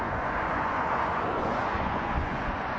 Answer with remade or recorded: remade